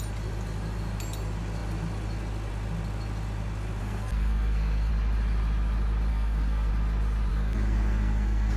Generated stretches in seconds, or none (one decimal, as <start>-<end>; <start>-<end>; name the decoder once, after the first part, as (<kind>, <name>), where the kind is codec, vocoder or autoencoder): 3.8-4.9 (codec, SNAC); 6.1-6.7; 7.3-8.6